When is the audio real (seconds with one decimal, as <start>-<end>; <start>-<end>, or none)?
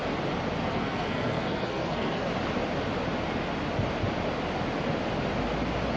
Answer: 0.0-0.6; 2.3-6.0